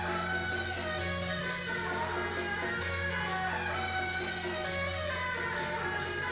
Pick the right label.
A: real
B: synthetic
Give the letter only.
A